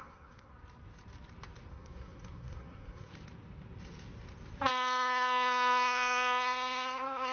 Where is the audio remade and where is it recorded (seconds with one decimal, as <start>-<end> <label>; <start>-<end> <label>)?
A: 0.0-0.5 remade; 0.5-1.7 recorded; 1.7-3.1 remade; 3.1-4.7 recorded; 4.7-7.3 remade